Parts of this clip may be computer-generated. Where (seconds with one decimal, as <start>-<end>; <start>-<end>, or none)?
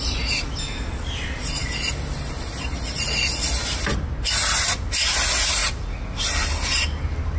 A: none